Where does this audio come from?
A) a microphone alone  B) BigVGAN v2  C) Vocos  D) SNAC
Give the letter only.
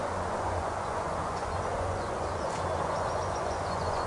C